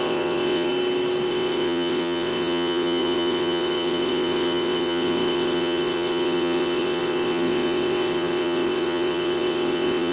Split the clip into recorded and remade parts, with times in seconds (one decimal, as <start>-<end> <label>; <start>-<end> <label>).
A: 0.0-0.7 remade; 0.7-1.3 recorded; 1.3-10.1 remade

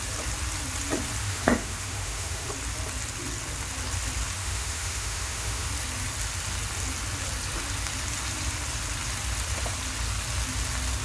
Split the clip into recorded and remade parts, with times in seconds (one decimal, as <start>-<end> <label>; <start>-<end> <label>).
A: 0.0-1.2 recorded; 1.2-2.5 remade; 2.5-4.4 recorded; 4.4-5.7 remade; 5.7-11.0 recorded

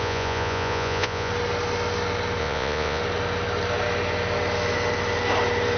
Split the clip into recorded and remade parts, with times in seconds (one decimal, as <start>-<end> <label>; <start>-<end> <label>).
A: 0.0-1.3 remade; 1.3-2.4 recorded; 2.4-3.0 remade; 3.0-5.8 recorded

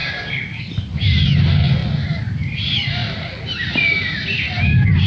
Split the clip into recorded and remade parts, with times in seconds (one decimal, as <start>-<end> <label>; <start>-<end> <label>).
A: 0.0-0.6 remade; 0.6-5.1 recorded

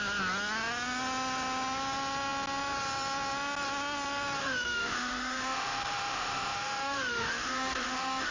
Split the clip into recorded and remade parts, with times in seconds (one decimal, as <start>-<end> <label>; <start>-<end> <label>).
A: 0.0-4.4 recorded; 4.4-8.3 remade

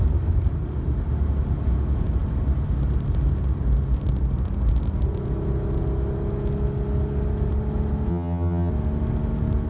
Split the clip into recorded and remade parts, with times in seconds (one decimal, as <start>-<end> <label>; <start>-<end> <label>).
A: 0.0-8.1 recorded; 8.1-8.7 remade; 8.7-9.7 recorded